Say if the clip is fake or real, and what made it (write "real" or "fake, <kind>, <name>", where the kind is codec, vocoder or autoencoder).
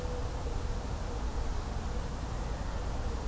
real